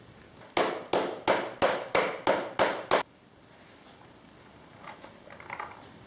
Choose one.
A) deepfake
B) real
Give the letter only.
B